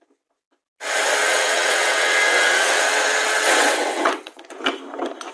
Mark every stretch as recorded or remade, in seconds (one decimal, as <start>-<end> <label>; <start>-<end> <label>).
0.0-1.2 recorded; 1.2-4.4 remade; 4.4-5.3 recorded